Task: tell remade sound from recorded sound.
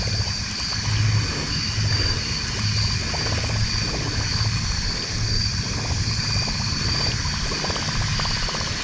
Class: recorded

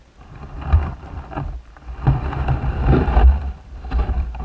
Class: remade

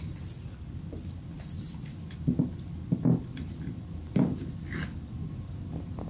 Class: remade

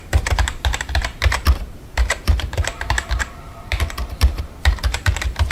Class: remade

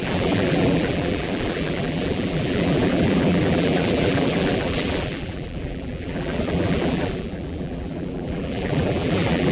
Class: remade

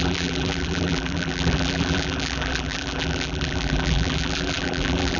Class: remade